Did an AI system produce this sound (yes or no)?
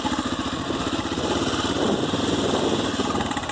no